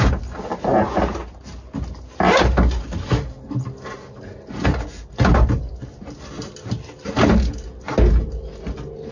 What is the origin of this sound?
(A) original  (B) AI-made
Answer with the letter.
A